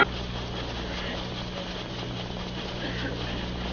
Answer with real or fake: real